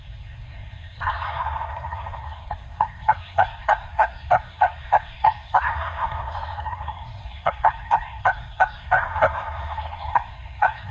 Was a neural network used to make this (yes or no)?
yes